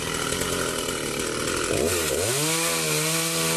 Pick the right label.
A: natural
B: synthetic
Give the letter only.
B